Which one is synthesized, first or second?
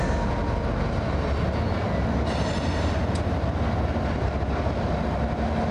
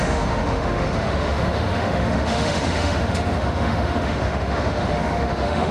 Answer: second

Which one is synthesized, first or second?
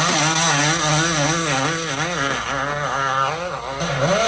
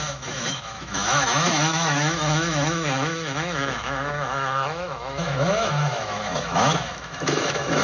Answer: second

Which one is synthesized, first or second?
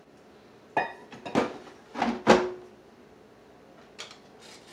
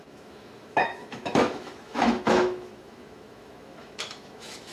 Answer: second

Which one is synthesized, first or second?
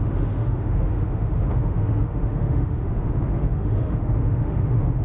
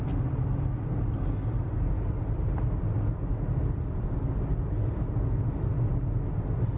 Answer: first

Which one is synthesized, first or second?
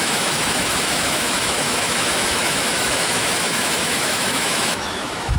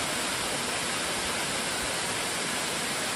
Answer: first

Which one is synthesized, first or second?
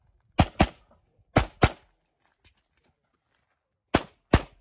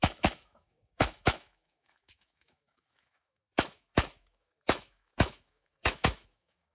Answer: second